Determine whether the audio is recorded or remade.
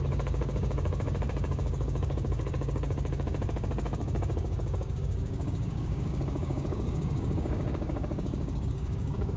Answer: remade